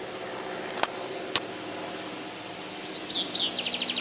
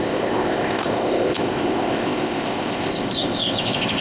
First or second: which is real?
first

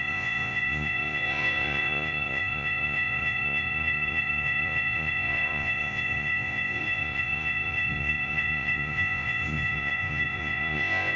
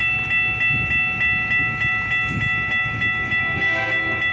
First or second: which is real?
second